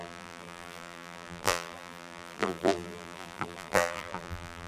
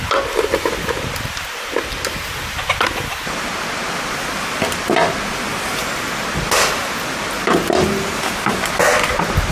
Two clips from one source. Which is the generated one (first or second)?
first